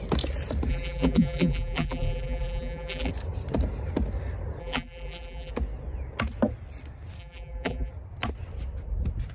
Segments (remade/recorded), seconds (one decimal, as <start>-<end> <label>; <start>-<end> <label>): 0.0-0.7 recorded; 0.7-3.1 remade; 3.1-4.6 recorded; 4.6-5.5 remade; 5.5-7.2 recorded; 7.2-7.9 remade; 7.9-9.3 recorded